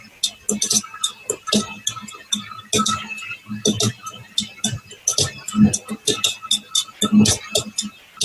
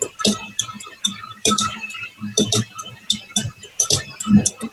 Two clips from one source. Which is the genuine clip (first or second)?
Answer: first